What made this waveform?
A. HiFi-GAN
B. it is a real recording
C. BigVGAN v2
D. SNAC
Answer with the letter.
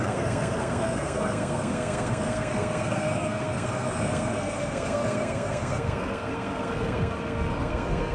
D